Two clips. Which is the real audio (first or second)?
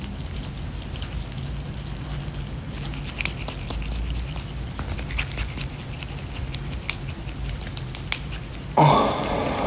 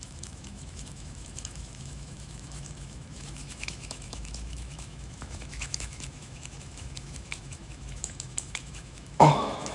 first